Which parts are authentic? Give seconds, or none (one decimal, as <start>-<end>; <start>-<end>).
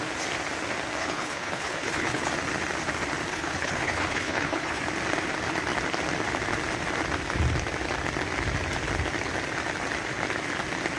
0.0-1.0; 2.3-3.3; 4.8-11.0